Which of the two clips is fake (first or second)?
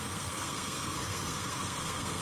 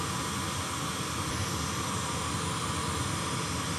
first